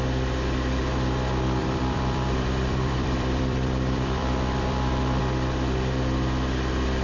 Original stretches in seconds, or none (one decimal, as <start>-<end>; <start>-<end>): 0.0-1.6; 5.2-7.0